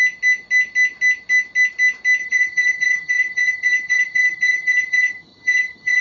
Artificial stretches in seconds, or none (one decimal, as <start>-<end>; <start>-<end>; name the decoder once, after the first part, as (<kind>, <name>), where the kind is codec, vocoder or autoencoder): 2.2-6.0 (vocoder, HiFi-GAN)